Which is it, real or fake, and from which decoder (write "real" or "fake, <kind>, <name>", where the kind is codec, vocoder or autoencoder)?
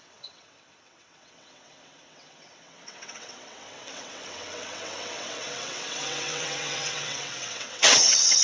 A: fake, vocoder, WaveNeXt